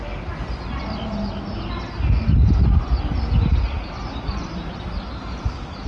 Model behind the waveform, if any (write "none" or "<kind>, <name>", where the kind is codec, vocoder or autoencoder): none